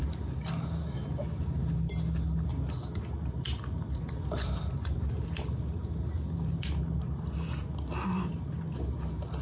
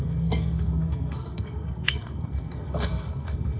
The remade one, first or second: second